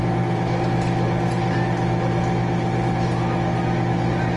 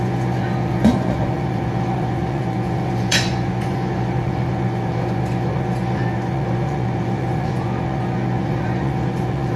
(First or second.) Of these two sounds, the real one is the first